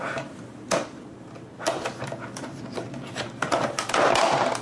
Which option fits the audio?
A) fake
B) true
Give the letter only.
B